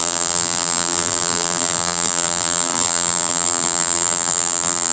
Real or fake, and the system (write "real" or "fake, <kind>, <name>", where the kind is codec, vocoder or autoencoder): fake, vocoder, BigVGAN v2